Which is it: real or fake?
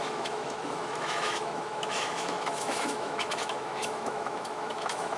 fake